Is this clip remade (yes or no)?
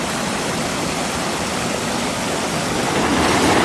no